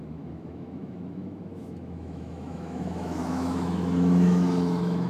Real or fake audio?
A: fake